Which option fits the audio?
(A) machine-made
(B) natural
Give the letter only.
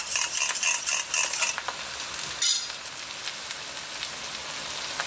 B